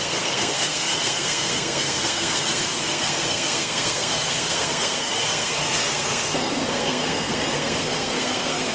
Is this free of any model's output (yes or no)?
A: no